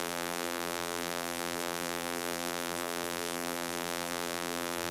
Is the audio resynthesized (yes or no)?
yes